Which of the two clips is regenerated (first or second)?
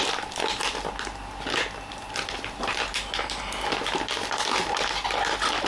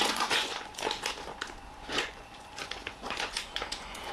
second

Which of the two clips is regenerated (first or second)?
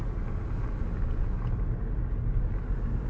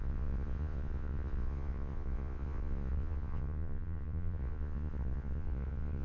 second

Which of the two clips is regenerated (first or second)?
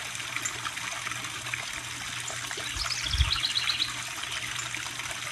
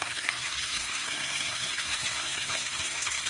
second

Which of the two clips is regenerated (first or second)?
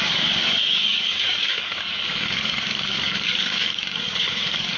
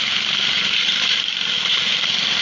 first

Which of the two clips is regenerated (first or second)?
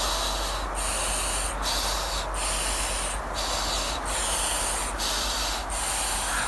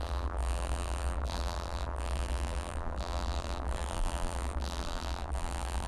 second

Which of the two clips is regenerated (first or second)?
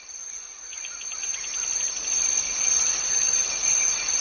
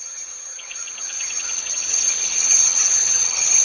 second